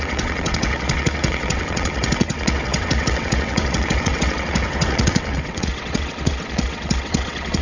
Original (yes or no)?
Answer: no